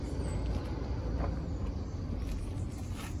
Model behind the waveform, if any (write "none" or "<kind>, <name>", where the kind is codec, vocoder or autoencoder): vocoder, BigVGAN v2